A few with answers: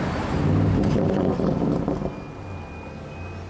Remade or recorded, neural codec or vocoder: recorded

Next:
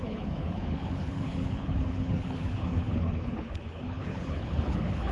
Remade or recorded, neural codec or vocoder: remade, codec, HILCodec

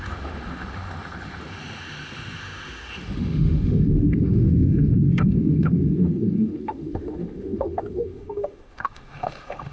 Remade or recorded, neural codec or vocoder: remade, autoencoder, DAC-VAE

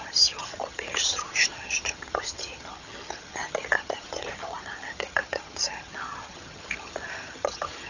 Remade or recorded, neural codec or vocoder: remade, vocoder, HiFi-GAN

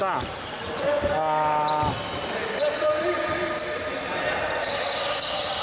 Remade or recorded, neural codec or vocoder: recorded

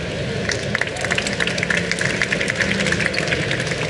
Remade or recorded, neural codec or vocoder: recorded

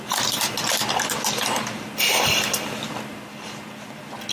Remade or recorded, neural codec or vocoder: recorded